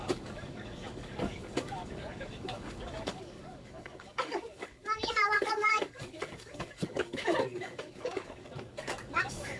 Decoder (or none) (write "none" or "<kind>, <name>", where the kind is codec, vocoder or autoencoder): codec, DAC